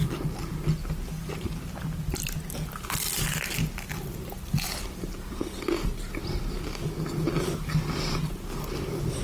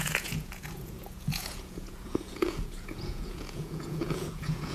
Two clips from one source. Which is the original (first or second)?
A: first